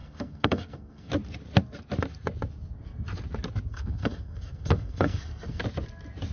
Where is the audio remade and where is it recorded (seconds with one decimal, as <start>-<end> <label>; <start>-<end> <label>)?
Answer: 0.0-1.1 remade; 1.1-3.7 recorded; 3.7-5.6 remade; 5.6-6.3 recorded